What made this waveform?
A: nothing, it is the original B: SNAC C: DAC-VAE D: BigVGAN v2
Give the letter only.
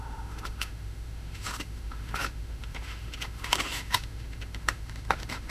C